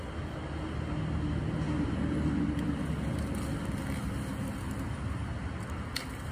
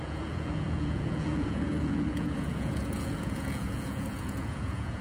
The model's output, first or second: second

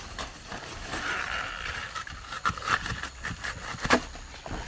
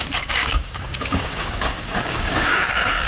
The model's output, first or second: second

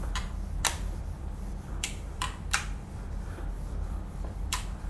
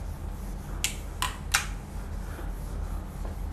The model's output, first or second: first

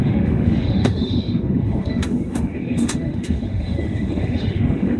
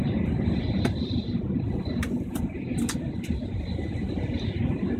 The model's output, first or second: first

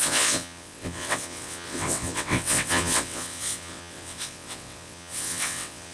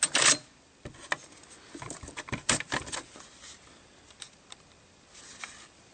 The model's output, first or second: first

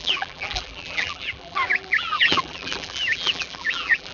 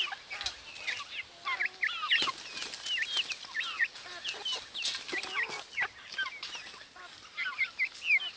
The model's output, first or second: first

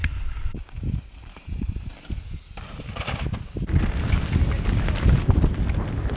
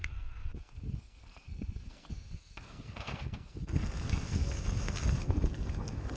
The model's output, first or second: second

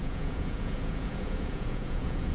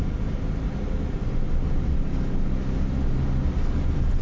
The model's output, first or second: first